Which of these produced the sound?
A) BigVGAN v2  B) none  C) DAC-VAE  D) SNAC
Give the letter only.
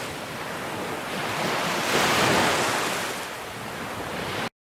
B